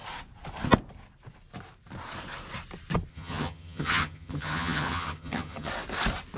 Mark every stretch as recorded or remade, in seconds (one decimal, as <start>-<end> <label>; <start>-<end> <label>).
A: 0.0-3.1 recorded; 3.1-5.7 remade; 5.7-6.4 recorded